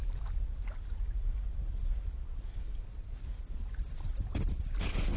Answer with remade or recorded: recorded